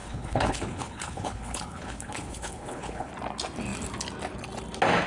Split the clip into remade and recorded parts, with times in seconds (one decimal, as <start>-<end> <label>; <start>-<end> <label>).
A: 0.0-3.1 remade; 3.1-5.1 recorded